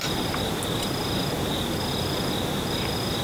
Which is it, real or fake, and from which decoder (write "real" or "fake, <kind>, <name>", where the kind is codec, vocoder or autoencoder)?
real